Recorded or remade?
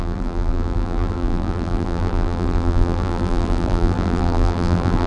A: remade